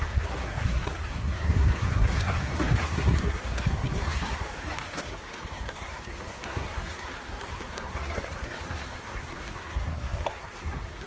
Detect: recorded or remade remade